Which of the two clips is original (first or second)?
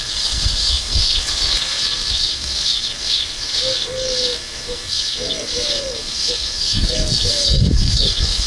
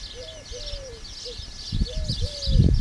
second